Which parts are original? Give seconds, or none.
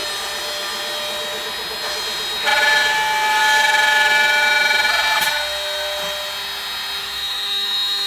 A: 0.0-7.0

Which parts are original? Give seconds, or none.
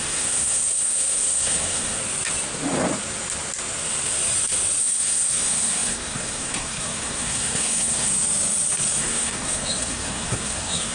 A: 2.0-4.8; 8.1-9.0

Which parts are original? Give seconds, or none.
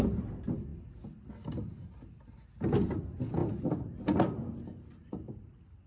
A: 0.0-5.9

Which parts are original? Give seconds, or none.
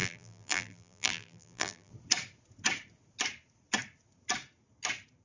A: 1.9-5.2